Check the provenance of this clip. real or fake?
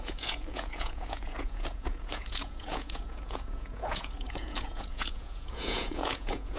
fake